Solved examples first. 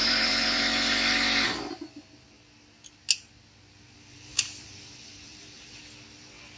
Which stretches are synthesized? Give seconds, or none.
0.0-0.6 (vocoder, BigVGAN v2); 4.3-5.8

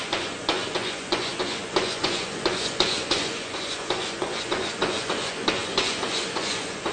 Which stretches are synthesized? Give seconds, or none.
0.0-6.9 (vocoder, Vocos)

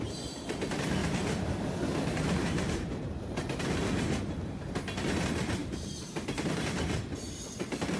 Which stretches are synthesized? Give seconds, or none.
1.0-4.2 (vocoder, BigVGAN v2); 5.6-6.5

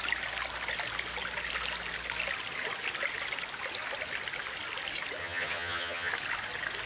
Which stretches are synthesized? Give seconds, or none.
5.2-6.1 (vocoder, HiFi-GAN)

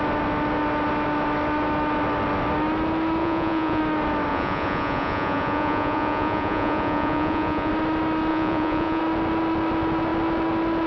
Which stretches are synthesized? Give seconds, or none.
3.2-3.8 (vocoder, Vocos); 4.3-7.7; 8.3-9.0

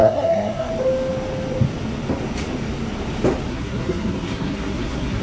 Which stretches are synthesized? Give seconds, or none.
0.0-0.7 (codec, SNAC); 3.5-5.2